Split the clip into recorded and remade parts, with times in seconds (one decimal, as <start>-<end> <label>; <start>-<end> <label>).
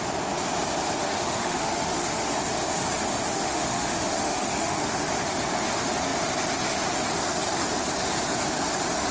0.0-1.0 recorded; 1.0-2.3 remade; 2.3-3.3 recorded; 3.3-5.0 remade; 5.0-9.1 recorded